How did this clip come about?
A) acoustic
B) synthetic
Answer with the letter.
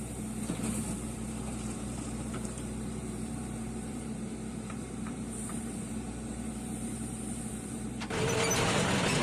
B